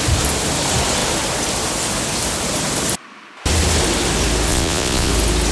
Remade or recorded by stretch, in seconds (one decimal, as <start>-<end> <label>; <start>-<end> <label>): 0.0-4.5 recorded; 4.5-5.1 remade; 5.1-5.5 recorded